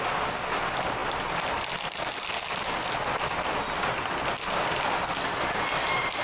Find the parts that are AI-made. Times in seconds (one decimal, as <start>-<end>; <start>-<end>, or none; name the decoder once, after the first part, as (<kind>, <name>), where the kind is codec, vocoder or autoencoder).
none